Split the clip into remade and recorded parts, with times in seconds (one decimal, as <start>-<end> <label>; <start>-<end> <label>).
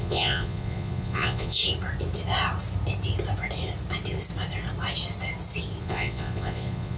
0.0-1.6 remade; 1.6-5.8 recorded; 5.8-7.0 remade